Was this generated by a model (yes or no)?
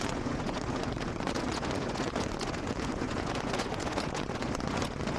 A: yes